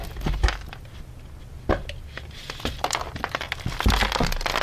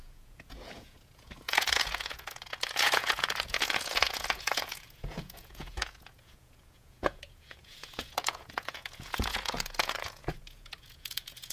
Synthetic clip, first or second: second